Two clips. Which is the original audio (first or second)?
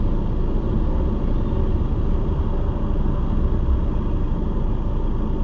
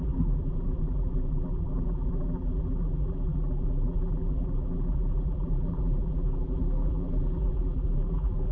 first